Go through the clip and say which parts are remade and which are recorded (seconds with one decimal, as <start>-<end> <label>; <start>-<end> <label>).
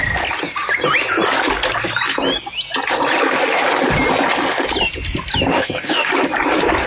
0.0-5.5 recorded; 5.5-6.1 remade; 6.1-6.9 recorded